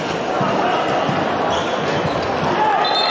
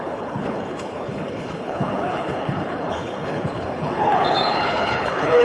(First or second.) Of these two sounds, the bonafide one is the first